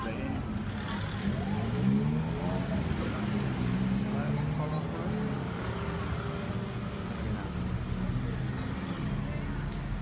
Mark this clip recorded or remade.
recorded